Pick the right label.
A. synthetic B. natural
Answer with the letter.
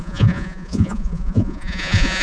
A